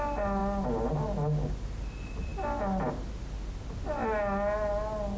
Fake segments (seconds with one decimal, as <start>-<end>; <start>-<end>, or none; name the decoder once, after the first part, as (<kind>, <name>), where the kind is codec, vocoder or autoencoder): none

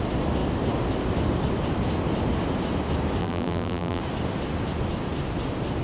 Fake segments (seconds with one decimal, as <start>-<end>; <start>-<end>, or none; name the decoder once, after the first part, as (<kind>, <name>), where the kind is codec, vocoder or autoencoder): 3.2-4.0 (vocoder, BigVGAN v2)